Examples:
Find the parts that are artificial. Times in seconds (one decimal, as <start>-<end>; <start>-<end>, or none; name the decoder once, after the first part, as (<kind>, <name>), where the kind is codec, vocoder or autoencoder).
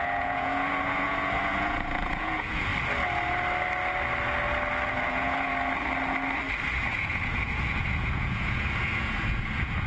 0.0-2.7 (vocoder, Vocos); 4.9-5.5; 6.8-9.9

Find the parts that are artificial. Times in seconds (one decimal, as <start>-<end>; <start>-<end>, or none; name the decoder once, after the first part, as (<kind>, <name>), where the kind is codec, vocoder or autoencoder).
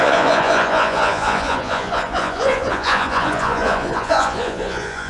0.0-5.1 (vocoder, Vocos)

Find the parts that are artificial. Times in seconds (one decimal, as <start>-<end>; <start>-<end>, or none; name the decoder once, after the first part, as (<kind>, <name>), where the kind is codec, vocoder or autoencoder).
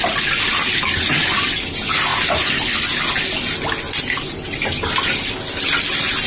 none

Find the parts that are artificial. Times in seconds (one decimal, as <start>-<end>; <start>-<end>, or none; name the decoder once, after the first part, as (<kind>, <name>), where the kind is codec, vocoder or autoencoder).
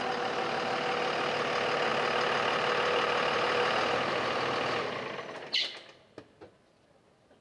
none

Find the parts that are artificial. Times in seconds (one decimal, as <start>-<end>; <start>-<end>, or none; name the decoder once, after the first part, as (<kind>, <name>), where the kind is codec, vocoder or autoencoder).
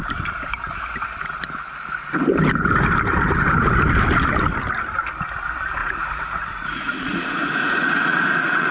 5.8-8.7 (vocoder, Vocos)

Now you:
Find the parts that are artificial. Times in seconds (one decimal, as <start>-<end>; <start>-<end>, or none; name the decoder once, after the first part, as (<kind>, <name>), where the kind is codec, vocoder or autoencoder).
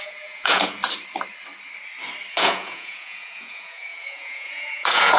0.0-0.8 (vocoder, Vocos); 2.3-5.2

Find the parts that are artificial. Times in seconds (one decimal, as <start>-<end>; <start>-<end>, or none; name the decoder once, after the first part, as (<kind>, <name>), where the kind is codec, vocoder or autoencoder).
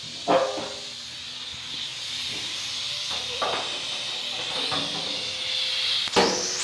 none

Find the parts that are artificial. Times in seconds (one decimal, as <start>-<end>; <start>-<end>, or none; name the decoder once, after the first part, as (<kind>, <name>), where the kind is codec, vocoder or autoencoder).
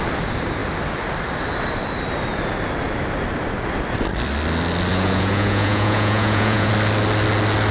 4.9-6.7 (vocoder, Vocos)